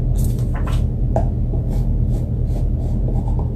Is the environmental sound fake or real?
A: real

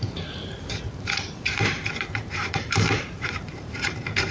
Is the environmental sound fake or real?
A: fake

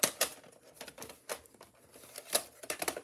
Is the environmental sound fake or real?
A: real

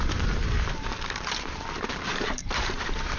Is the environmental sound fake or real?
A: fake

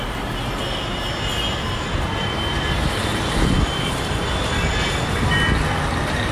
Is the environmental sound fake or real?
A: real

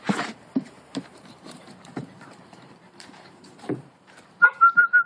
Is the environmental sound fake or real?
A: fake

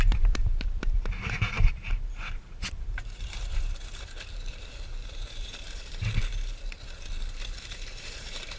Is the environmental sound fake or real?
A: fake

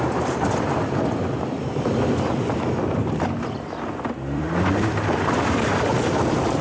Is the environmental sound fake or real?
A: fake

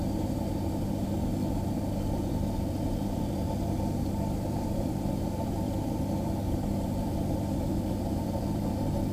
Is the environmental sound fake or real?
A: fake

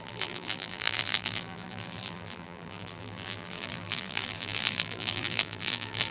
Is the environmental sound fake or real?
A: fake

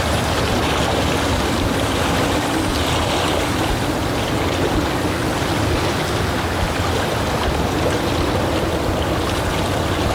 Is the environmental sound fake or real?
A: real